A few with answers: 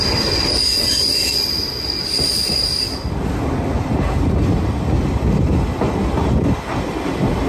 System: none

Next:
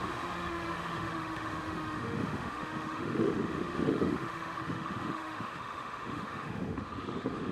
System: autoencoder, DAC-VAE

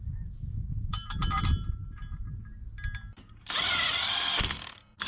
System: none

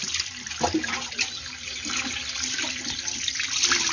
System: none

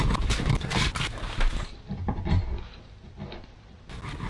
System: none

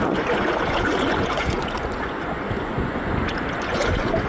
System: vocoder, Vocos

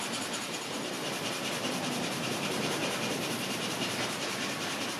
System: vocoder, BigVGAN v2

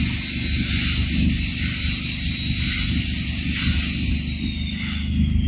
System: none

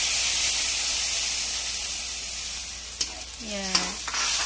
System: none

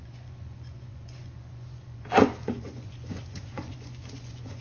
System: vocoder, Vocos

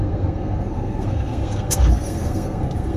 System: codec, SNAC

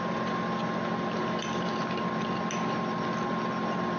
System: none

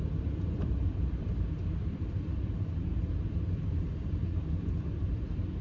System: vocoder, BigVGAN v2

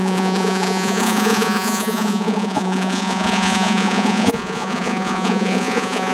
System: vocoder, Vocos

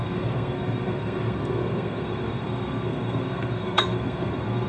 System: codec, SNAC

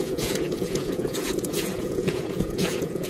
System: vocoder, Vocos